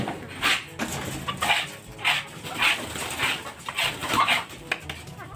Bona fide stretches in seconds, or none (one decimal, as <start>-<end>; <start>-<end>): 0.0-5.4